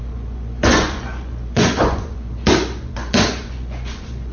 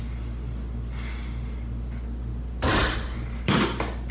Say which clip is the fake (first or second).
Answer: first